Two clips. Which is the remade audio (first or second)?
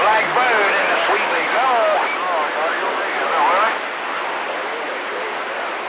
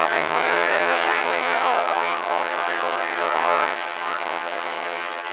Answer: second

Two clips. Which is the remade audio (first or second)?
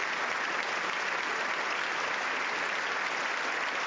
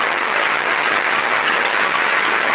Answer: second